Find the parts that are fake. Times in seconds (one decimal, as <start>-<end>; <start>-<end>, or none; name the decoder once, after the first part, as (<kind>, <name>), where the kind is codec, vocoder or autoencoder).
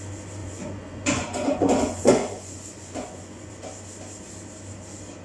0.4-3.5 (vocoder, Vocos)